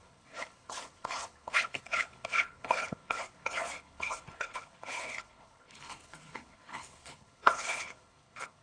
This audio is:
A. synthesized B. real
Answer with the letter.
A